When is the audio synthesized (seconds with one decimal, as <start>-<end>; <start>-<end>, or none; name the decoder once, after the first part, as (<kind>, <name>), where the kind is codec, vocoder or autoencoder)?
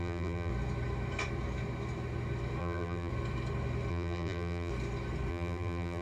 0.0-0.5 (vocoder, BigVGAN v2); 2.6-3.1; 3.9-4.7; 5.3-6.0